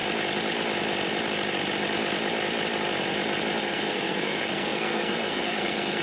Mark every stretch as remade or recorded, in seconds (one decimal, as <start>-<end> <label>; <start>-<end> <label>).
0.0-3.6 recorded; 3.6-6.0 remade